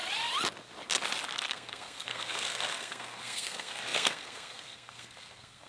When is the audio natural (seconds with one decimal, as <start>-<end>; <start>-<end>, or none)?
0.0-1.5